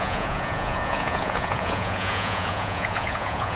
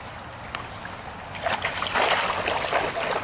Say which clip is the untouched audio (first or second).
second